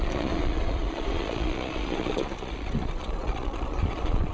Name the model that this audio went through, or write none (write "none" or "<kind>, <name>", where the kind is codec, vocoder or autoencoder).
vocoder, Vocos